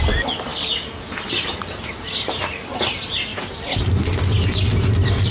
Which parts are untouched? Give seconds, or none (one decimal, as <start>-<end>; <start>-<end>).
0.0-0.5; 2.9-3.3; 3.8-5.3